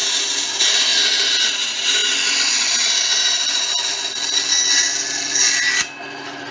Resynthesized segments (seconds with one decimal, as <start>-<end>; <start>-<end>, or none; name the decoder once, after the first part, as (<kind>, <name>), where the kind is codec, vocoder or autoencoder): none